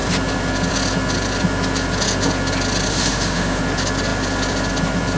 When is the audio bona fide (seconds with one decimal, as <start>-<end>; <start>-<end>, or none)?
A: 0.0-2.9; 3.6-5.2